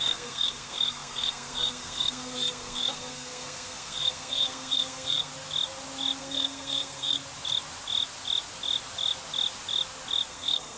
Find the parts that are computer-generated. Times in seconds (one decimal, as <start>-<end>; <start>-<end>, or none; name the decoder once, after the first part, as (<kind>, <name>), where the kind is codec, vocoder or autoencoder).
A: 0.0-5.3 (codec, SNAC); 6.2-7.2; 10.3-10.8